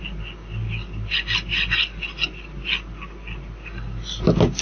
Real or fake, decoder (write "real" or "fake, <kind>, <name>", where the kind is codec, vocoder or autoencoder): real